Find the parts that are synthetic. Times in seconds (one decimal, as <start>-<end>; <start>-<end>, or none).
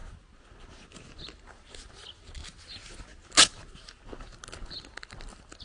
none